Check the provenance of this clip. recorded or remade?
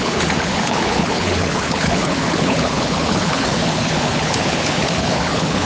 remade